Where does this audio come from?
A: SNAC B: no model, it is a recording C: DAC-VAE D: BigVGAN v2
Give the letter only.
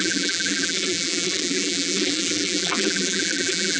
D